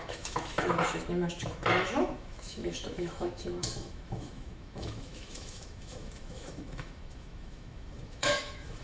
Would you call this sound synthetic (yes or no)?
yes